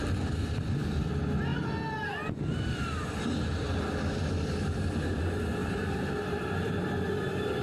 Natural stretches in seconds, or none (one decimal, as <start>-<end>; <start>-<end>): 0.0-5.6